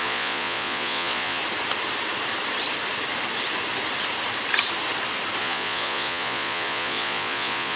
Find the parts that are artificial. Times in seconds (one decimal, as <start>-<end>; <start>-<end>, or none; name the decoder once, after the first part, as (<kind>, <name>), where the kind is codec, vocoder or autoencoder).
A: 0.0-1.4 (vocoder, Vocos); 5.4-7.8

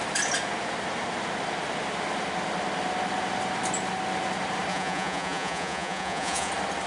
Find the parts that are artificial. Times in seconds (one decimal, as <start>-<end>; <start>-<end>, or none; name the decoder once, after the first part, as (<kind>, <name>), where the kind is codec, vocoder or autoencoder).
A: 4.7-6.5 (vocoder, Vocos)

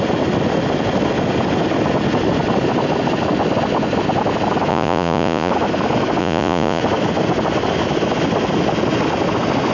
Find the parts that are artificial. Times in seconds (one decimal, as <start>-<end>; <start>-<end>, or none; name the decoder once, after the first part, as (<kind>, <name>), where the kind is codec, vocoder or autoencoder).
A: 4.7-5.5 (vocoder, Vocos); 6.2-6.8

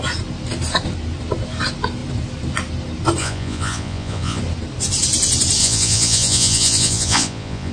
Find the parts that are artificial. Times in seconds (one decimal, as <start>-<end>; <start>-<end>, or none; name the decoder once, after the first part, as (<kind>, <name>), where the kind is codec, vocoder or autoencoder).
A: 3.2-4.4 (vocoder, Vocos); 5.6-7.7